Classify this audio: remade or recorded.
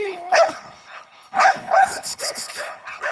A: remade